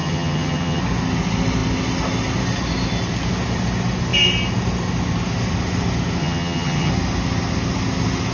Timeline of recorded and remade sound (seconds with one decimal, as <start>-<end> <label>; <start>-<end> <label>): 0.0-0.8 remade; 0.8-6.2 recorded; 6.2-6.9 remade; 6.9-8.3 recorded